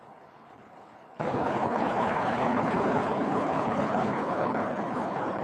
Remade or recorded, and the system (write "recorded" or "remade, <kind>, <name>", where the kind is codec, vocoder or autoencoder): remade, codec, HILCodec